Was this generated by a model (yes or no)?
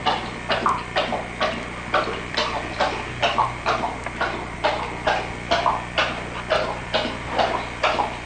no